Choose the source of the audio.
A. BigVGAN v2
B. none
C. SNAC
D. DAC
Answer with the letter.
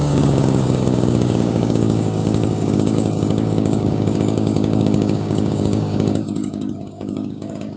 D